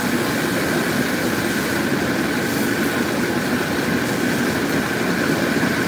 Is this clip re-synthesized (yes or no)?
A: no